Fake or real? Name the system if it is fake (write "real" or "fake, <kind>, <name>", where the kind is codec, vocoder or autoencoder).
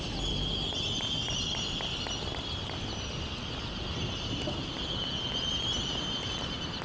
real